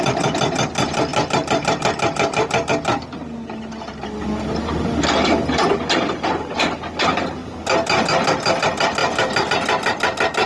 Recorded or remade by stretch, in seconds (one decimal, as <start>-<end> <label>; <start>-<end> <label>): 0.0-1.1 recorded; 1.1-2.7 remade; 2.7-9.0 recorded; 9.0-9.5 remade; 9.5-10.5 recorded